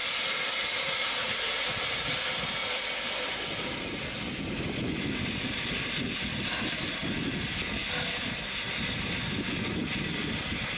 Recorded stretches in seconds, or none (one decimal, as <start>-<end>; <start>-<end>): 0.0-10.8